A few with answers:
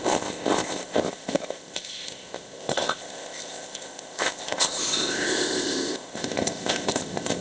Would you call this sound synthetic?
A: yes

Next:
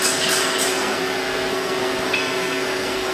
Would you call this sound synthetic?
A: yes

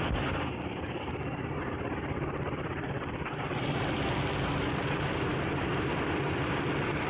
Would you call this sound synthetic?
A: no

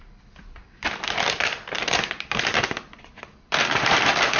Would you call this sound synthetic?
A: yes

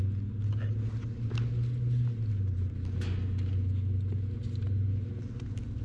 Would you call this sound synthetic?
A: no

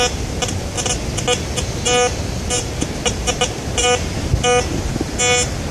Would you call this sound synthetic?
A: no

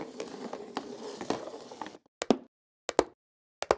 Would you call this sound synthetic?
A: no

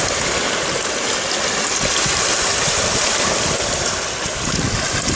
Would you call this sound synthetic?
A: no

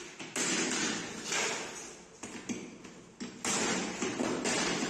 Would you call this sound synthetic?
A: no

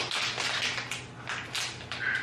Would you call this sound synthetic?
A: no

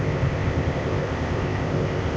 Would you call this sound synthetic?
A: yes